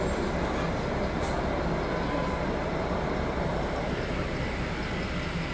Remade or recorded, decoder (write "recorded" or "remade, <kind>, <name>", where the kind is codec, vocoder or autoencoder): recorded